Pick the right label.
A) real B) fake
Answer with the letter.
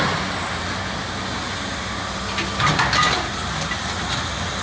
A